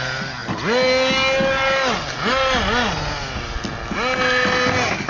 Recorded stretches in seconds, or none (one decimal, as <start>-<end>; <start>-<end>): 0.0-5.1